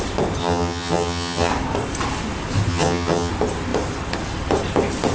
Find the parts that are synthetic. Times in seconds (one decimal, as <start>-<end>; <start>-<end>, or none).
0.4-1.5; 2.7-3.3